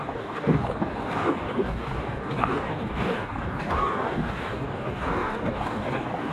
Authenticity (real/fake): fake